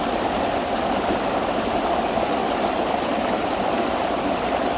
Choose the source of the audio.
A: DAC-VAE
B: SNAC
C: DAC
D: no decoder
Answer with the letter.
D